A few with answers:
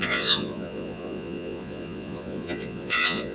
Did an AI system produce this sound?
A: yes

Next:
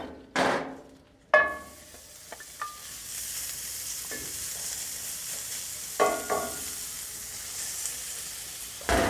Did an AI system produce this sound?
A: no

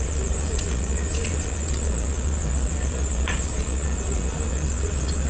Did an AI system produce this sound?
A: yes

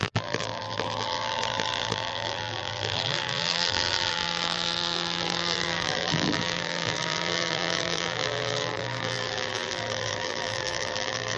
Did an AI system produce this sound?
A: yes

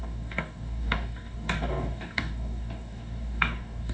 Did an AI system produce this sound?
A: yes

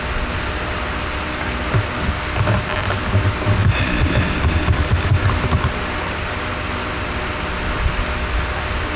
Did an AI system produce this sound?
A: no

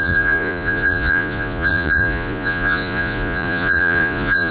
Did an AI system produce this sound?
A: yes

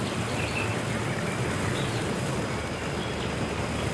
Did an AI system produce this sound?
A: no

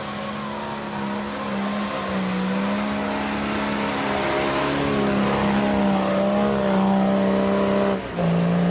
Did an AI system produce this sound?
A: no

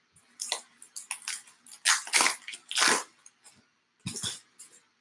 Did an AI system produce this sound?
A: no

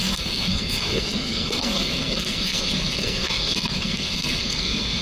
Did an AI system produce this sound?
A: yes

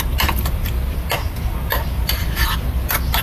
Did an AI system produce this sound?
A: no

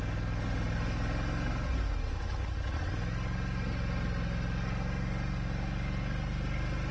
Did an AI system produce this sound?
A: no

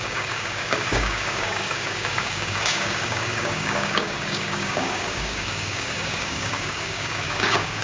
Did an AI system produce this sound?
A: yes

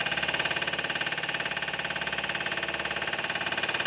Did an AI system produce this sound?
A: no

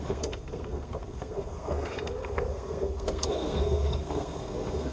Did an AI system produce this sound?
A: yes